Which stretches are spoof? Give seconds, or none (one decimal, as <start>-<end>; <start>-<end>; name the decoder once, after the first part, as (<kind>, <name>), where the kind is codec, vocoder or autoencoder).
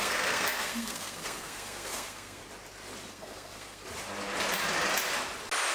0.0-2.4 (codec, SNAC); 3.1-3.8